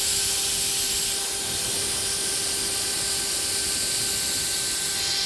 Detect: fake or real real